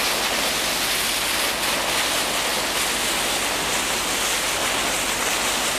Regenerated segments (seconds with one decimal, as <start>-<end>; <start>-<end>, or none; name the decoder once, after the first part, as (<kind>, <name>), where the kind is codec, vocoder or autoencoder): none